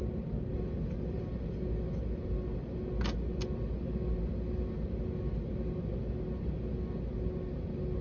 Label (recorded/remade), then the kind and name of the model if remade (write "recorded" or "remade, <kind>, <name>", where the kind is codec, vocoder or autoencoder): recorded